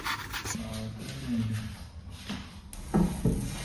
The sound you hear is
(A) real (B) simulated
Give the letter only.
A